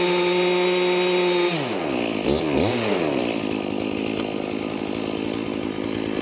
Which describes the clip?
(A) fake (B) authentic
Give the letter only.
B